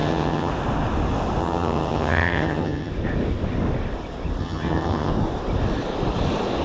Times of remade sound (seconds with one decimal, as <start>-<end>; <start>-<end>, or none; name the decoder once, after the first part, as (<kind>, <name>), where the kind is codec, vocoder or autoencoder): 0.0-0.5 (vocoder, HiFi-GAN); 1.4-2.9; 4.4-5.1